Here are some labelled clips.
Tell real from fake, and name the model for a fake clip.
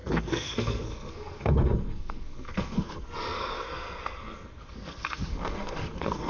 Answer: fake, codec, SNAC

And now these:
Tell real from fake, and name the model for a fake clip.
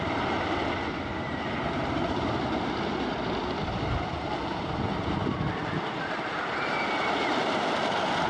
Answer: fake, vocoder, BigVGAN v2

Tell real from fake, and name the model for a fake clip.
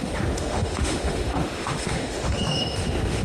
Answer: fake, autoencoder, DAC-VAE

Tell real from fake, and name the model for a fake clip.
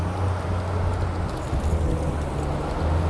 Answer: real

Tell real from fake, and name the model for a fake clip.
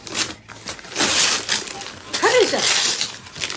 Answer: real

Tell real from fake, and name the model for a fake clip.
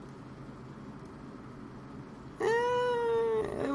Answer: real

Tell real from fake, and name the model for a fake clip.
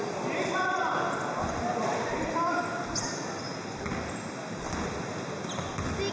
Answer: real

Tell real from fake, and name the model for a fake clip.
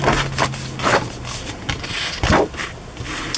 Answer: real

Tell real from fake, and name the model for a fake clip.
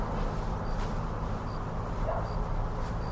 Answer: real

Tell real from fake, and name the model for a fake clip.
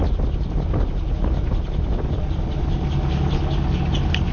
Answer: real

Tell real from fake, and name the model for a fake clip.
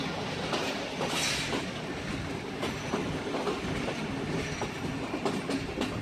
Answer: real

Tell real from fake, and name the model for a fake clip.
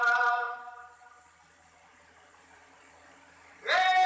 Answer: real